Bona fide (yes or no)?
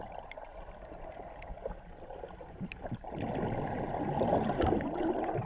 yes